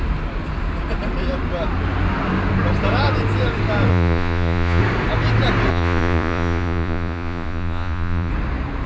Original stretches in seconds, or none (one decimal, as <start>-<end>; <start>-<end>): 0.0-3.9; 4.8-5.7; 8.3-8.9